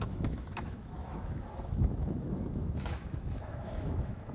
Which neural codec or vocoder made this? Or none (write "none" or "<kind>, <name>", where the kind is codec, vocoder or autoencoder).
autoencoder, DAC-VAE